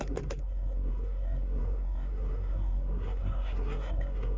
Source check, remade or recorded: remade